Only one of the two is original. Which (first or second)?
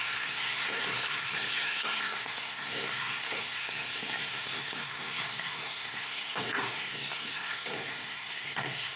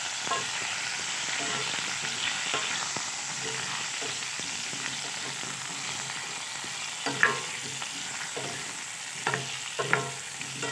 second